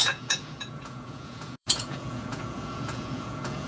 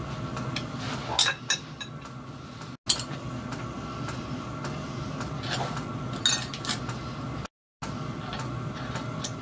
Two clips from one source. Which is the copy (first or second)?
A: first